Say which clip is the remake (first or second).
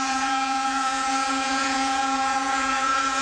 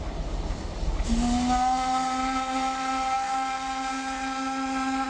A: first